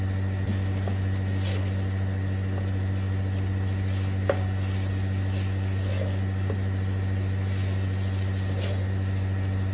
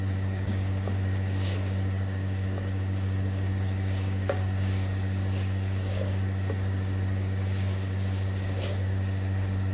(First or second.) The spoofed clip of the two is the second